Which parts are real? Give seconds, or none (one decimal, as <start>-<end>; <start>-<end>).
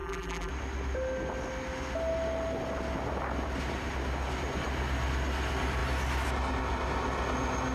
0.5-7.7